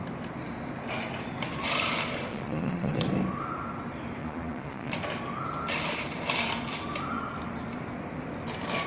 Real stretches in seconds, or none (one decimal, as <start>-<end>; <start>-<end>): 0.0-2.3; 3.1-4.2; 4.9-8.9